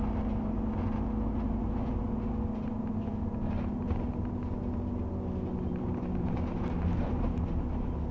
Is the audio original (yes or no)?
yes